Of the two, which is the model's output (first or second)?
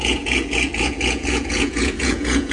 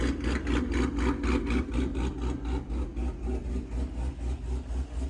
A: first